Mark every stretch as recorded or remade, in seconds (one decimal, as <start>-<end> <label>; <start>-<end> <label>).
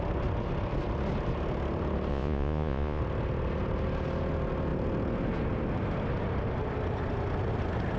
0.0-2.1 recorded; 2.1-3.0 remade; 3.0-8.0 recorded